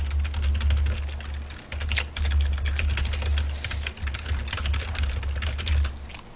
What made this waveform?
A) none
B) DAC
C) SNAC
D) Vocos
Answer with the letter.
A